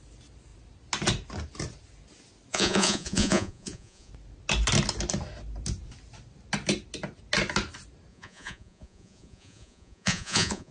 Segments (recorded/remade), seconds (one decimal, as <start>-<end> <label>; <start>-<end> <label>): 0.0-2.5 recorded; 2.5-4.1 remade; 4.1-8.1 recorded; 8.1-10.7 remade